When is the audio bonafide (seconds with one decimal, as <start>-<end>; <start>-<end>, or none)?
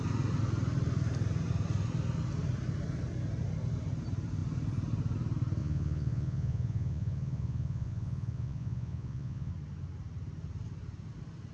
0.0-5.6; 9.5-11.5